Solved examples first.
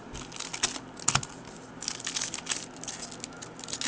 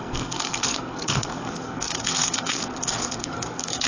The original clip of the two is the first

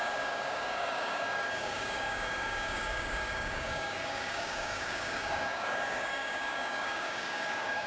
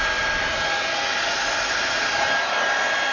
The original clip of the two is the second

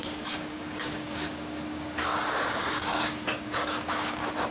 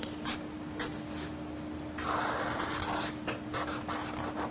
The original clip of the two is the second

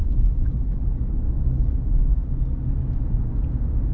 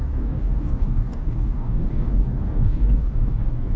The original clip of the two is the first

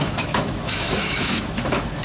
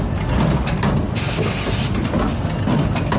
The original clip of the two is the second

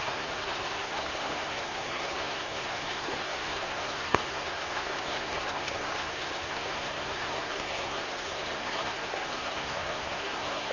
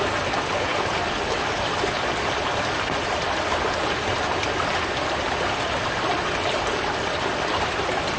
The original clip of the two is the second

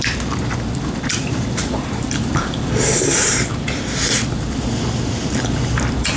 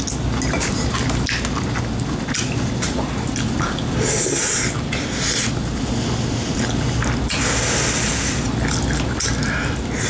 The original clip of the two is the second